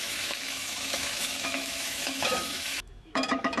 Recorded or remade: remade